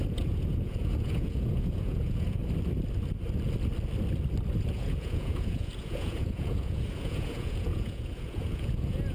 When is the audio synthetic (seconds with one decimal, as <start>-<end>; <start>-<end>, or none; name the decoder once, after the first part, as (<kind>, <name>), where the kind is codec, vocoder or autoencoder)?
0.0-2.4 (vocoder, Vocos); 4.6-9.1